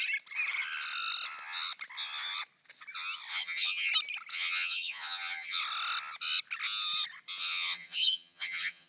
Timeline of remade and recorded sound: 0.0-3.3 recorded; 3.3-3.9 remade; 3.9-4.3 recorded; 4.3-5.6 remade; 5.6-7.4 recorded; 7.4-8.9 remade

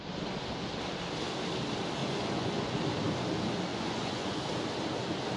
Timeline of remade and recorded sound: 0.0-2.0 recorded; 2.0-2.8 remade; 2.8-3.7 recorded; 3.7-4.4 remade; 4.4-5.4 recorded

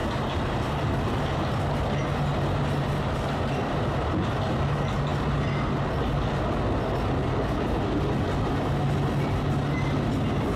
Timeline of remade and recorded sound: 0.0-10.6 recorded

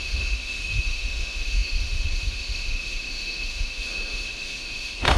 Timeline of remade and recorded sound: 0.0-5.2 remade

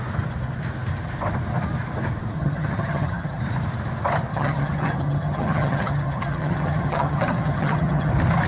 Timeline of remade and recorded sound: 0.0-2.4 recorded; 2.4-3.4 remade; 3.4-4.3 recorded; 4.3-8.1 remade; 8.1-8.5 recorded

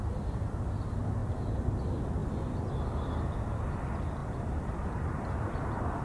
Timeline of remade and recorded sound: 0.0-4.2 recorded; 4.2-6.0 remade